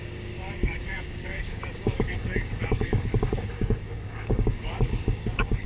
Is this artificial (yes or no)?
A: yes